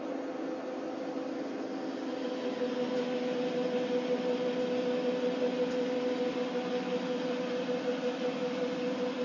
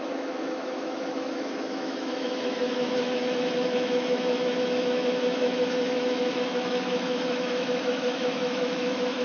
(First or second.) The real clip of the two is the first